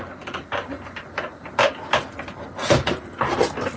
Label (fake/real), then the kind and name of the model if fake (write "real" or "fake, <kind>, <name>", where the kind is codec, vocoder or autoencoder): real